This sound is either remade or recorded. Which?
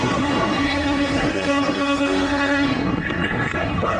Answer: remade